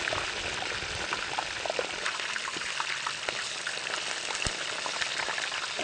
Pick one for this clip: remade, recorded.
recorded